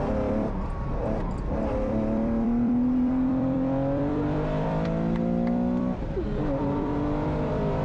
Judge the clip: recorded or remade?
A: remade